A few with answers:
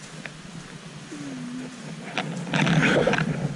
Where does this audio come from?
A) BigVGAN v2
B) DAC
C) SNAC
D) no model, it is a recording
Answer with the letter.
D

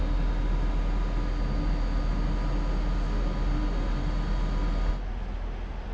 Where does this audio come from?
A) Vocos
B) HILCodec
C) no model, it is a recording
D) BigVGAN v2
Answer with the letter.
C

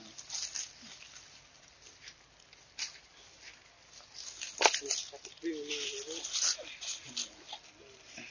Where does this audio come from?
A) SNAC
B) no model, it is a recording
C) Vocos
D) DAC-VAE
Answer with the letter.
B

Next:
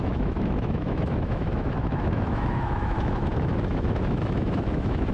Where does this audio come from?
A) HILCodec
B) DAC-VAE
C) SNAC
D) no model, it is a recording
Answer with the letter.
B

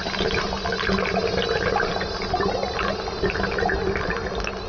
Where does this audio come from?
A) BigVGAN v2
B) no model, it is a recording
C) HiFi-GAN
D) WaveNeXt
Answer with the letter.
B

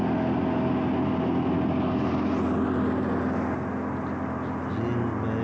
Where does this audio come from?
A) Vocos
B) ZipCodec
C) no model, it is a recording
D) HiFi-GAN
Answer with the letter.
C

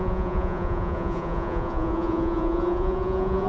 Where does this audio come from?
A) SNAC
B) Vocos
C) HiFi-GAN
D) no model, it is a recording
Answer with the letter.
B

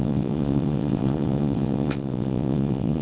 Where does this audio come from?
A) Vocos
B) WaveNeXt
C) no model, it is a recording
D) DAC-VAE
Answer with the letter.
B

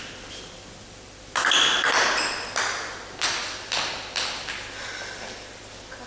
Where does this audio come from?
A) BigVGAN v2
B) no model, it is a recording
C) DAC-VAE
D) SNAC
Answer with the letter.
B